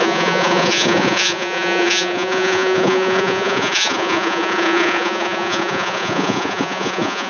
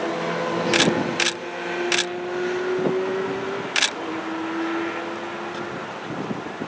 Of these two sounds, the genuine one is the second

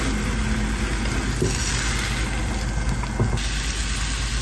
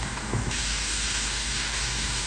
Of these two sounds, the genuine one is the first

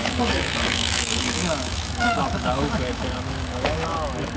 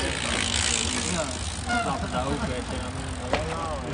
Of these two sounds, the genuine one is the second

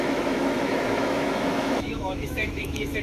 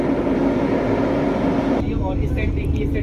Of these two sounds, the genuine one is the second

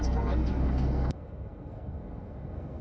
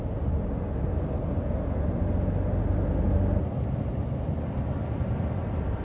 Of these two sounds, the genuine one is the second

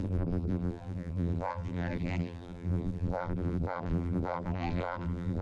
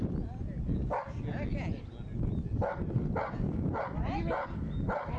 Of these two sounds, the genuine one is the second